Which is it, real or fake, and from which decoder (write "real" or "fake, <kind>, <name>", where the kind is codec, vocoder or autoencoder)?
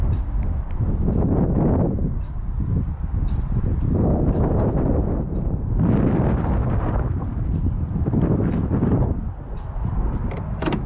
real